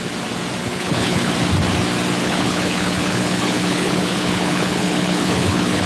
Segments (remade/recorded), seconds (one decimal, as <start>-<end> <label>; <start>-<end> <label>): 0.0-0.6 recorded; 0.6-1.3 remade; 1.3-2.2 recorded; 2.2-5.9 remade